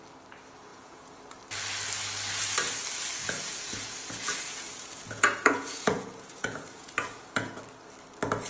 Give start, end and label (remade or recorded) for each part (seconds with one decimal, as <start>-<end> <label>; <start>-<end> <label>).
0.0-0.7 recorded; 0.7-1.2 remade; 1.2-3.2 recorded; 3.2-7.6 remade; 7.6-8.5 recorded